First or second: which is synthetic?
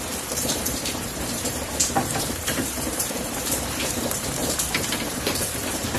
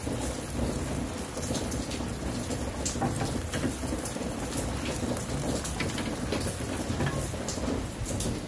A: first